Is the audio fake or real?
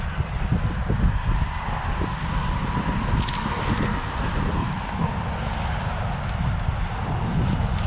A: real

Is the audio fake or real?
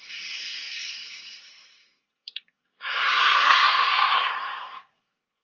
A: fake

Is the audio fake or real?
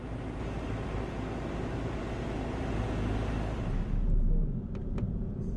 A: real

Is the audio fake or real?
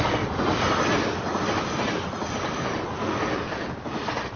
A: real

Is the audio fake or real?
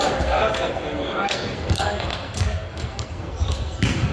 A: fake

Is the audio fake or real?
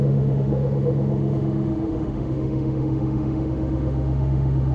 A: fake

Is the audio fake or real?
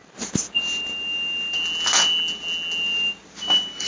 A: real